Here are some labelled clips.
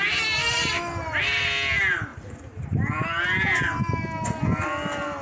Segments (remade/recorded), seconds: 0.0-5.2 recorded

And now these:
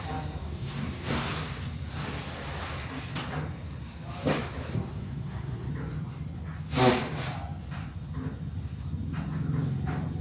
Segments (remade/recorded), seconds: 0.0-0.4 recorded; 0.4-1.3 remade; 1.3-4.7 recorded; 4.7-5.7 remade; 5.7-10.2 recorded

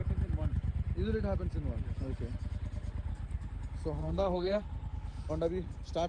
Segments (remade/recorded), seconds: 0.0-3.1 recorded; 3.1-3.6 remade; 3.6-4.0 recorded; 4.0-5.3 remade; 5.3-6.1 recorded

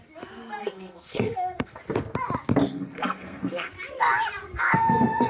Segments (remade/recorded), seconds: 0.0-0.6 recorded; 0.6-1.8 remade; 1.8-2.7 recorded; 2.7-3.7 remade; 3.7-4.4 recorded; 4.4-5.3 remade

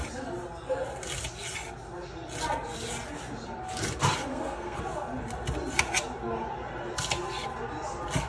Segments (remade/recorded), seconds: 0.0-4.3 recorded; 4.3-4.8 remade; 4.8-8.3 recorded